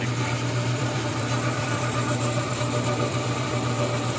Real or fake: fake